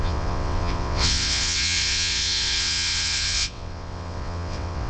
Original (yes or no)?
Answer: no